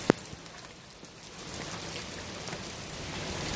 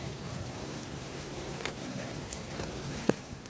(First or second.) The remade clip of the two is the second